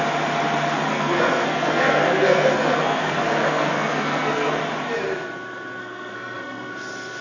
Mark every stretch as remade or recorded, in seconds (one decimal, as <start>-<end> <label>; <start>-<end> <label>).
0.0-0.9 recorded; 0.9-4.6 remade; 4.6-5.8 recorded; 5.8-6.7 remade; 6.7-7.2 recorded